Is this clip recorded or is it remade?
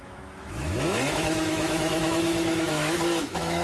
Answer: remade